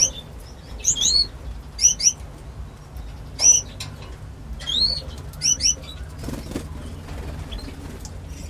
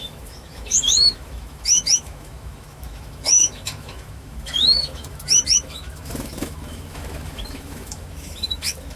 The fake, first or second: second